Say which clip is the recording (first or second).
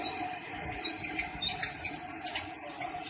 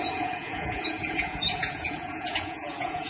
first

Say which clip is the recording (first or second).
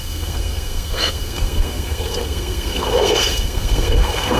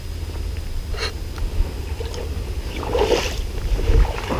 second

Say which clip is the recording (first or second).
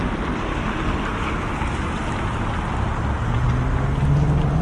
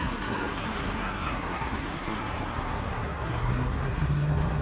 first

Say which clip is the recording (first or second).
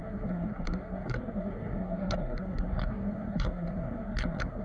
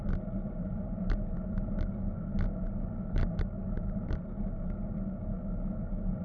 second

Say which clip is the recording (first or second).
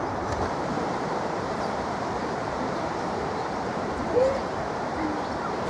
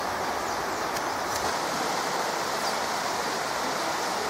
second